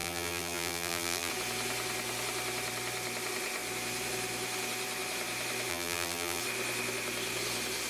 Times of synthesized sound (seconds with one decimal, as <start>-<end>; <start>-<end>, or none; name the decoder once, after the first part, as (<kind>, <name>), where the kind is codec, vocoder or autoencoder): 0.0-1.3 (vocoder, BigVGAN v2); 5.7-6.4

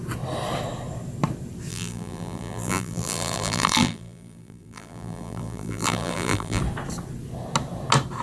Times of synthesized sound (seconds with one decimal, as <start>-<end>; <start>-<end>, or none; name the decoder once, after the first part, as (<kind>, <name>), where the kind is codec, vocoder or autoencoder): 1.7-6.6 (vocoder, BigVGAN v2)

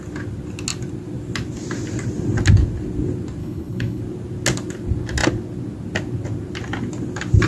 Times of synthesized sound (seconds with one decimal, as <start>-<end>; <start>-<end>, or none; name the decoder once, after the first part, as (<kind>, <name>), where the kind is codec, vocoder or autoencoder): 3.4-4.0 (codec, HILCodec)

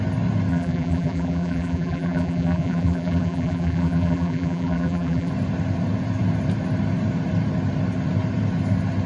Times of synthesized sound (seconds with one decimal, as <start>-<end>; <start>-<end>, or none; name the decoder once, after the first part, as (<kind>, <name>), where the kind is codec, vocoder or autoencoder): 0.5-5.3 (vocoder, BigVGAN v2)